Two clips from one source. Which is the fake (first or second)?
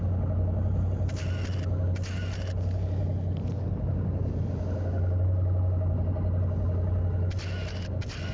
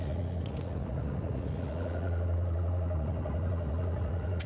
second